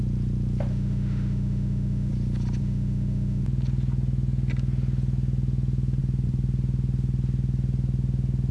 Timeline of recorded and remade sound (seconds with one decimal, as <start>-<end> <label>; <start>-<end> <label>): 0.0-0.7 recorded; 0.7-2.1 remade; 2.1-2.6 recorded; 2.6-3.4 remade; 3.4-8.5 recorded